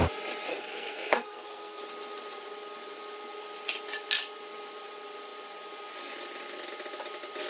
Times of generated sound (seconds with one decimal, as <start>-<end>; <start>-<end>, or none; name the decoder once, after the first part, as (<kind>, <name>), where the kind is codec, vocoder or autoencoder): 0.5-1.8 (codec, SNAC)